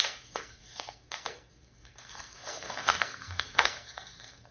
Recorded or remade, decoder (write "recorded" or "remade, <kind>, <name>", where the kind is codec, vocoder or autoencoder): remade, codec, SNAC